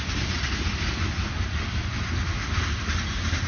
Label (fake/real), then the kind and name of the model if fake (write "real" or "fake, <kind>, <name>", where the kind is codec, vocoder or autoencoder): real